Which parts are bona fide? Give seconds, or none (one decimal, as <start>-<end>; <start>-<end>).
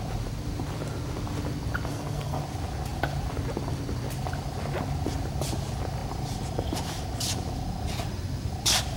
0.0-1.9; 2.4-9.0